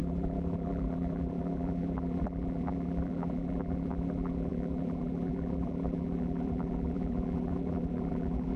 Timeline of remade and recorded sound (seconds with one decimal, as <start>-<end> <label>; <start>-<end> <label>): 0.0-8.6 remade